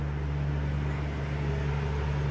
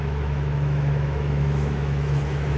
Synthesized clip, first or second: second